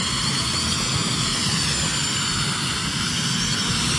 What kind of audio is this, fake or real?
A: real